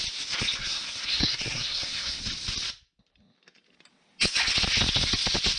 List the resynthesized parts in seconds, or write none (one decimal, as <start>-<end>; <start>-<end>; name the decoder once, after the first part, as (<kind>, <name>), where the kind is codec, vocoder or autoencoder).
0.6-2.2 (codec, SNAC)